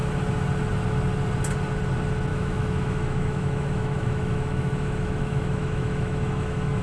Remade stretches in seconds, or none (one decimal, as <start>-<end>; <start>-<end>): 2.3-6.8